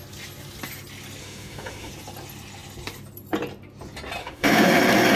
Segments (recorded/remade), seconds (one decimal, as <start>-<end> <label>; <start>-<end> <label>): 0.0-1.2 recorded; 1.2-1.9 remade; 1.9-4.2 recorded; 4.2-4.8 remade; 4.8-5.2 recorded